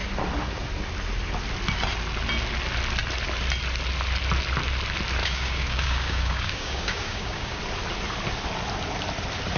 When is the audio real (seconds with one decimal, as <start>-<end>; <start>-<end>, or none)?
0.0-5.2; 7.6-9.6